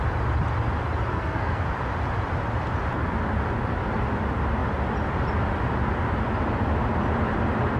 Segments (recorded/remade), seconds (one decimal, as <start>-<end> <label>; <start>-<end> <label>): 0.0-1.1 recorded; 1.1-1.6 remade; 1.6-7.8 recorded